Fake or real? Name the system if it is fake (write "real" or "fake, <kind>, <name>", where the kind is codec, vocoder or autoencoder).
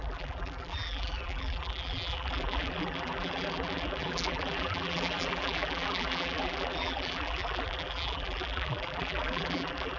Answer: fake, vocoder, BigVGAN v2